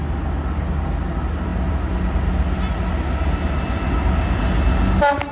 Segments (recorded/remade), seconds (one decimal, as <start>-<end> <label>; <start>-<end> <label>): 0.0-5.3 recorded